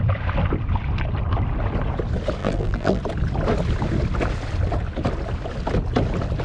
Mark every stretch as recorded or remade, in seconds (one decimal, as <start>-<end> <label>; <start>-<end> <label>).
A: 0.0-2.4 recorded; 2.4-3.0 remade; 3.0-6.4 recorded